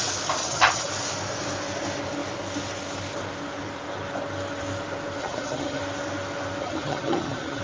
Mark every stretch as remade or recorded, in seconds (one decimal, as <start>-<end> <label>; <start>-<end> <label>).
0.0-0.4 recorded; 0.4-0.9 remade; 0.9-5.2 recorded; 5.2-5.8 remade; 5.8-6.6 recorded; 6.6-7.6 remade